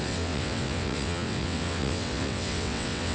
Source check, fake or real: fake